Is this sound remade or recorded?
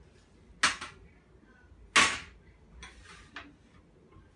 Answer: recorded